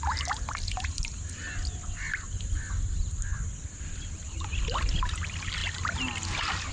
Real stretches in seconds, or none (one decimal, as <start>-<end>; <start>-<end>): 0.0-6.7